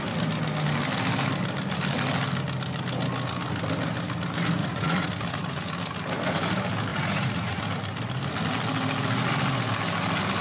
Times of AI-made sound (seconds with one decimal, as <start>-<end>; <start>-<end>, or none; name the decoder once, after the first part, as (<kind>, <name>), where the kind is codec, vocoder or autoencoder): 4.6-5.1 (vocoder, Vocos); 6.9-7.6